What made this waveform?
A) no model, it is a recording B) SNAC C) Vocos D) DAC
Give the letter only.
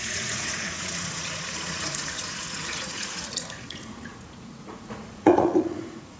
C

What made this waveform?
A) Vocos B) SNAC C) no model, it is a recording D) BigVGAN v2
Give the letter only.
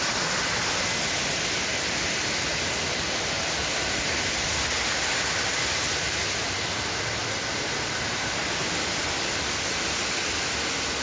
C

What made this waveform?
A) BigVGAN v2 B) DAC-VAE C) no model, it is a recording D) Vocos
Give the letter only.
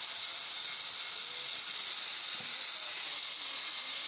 C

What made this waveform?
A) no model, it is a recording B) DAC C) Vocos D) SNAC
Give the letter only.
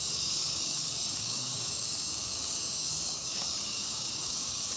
B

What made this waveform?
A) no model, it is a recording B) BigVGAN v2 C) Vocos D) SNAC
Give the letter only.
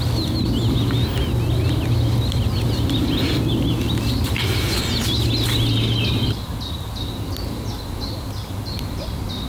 A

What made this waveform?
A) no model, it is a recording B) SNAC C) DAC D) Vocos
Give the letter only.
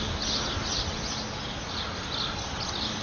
A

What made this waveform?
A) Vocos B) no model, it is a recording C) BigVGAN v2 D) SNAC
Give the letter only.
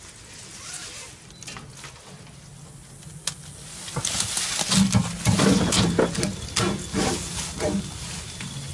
B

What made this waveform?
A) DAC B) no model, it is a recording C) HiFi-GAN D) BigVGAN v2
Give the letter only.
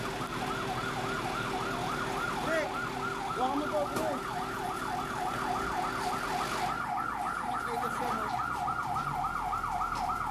B